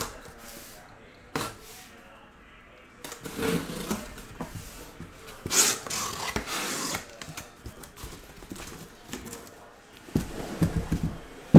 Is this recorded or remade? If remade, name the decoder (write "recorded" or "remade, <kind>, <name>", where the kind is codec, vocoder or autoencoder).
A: recorded